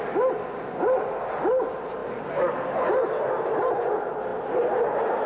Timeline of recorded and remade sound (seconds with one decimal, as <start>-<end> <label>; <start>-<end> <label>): 0.0-5.3 recorded